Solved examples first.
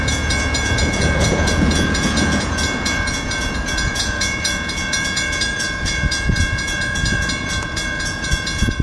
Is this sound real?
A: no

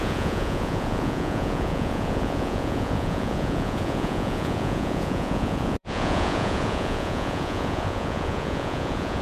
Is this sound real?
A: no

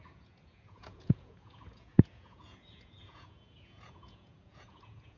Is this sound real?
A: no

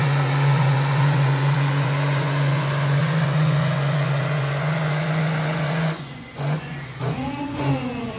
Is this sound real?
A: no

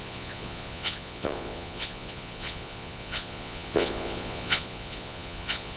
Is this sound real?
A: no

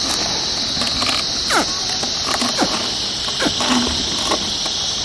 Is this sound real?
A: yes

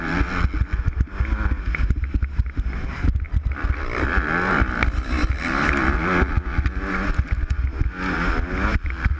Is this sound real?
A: yes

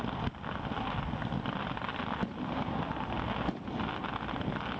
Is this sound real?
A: yes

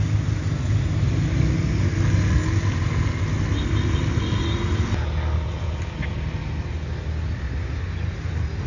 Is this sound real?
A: yes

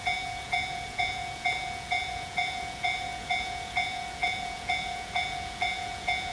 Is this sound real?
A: no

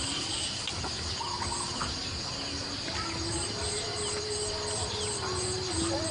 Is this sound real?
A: yes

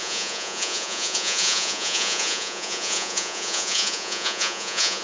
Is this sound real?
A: no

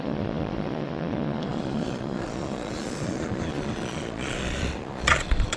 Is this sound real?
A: no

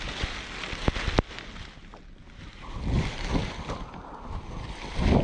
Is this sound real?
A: yes